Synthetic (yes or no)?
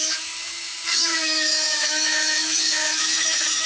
yes